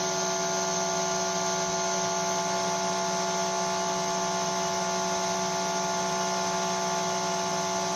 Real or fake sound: real